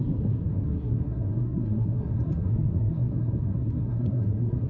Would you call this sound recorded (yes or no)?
no